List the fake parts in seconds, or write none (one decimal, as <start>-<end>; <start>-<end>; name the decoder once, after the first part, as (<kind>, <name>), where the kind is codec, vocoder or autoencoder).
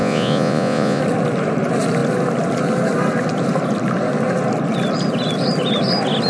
0.0-1.0 (vocoder, Vocos)